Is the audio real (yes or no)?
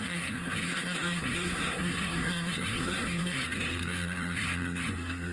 no